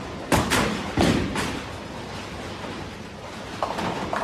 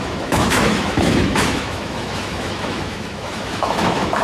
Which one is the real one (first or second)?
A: first